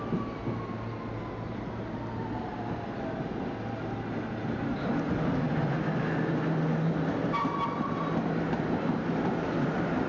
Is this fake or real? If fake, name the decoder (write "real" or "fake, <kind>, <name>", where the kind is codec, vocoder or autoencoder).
real